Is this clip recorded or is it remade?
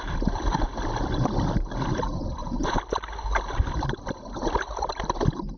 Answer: recorded